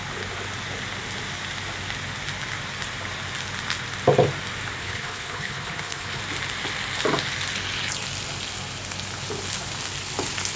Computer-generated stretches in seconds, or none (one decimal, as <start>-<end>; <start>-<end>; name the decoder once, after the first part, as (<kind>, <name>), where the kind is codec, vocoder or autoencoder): 4.8-6.2 (codec, HILCodec)